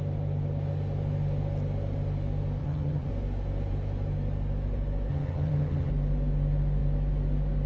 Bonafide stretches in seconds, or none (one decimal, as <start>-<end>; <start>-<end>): 0.0-2.6; 3.1-5.1; 5.9-7.7